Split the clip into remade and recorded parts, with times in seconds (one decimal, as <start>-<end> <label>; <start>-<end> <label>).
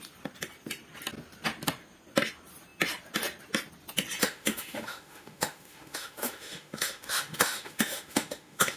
0.0-4.2 recorded; 4.2-8.8 remade